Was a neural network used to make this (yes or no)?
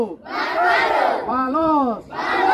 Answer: yes